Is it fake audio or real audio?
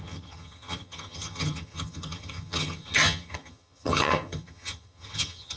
fake